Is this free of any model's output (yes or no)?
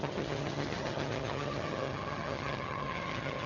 no